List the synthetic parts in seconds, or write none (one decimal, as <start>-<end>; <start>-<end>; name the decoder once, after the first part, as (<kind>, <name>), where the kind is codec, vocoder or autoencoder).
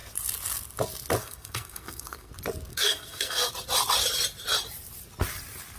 1.2-2.3 (codec, SNAC); 2.7-3.5